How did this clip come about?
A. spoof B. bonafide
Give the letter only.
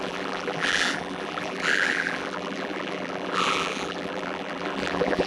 A